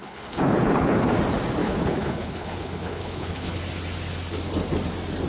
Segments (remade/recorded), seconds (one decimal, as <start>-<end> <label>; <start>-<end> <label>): 0.0-1.1 remade; 1.1-1.6 recorded; 1.6-3.6 remade; 3.6-5.3 recorded